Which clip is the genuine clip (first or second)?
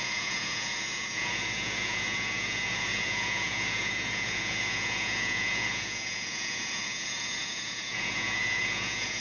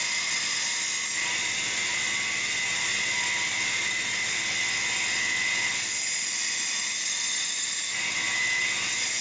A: second